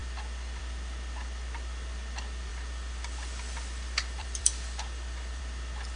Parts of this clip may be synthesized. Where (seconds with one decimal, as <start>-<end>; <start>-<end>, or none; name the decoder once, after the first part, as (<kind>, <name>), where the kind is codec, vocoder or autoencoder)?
2.5-5.4 (vocoder, BigVGAN v2)